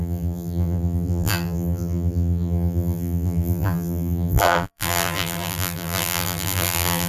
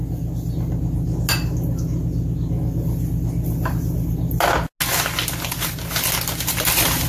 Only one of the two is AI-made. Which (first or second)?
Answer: first